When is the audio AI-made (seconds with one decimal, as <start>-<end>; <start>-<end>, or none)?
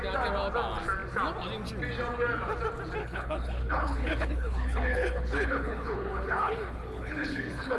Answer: 3.0-7.8